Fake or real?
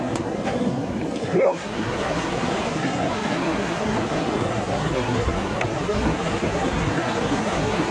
fake